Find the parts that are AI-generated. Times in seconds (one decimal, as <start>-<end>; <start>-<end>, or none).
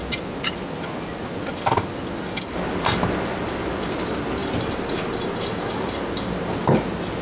none